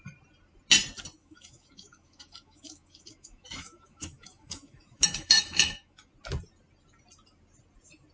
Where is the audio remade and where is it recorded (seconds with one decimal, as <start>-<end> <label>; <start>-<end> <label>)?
0.0-1.2 recorded; 1.2-6.1 remade; 6.1-8.1 recorded